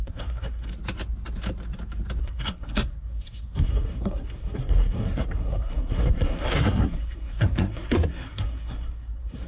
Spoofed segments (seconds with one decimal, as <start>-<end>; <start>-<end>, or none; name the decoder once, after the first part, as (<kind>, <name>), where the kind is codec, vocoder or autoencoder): 0.0-0.7 (codec, SNAC); 2.2-9.5